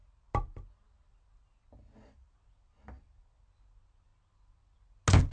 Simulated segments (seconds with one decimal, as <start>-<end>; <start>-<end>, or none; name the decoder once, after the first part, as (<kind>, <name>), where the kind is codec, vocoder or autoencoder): none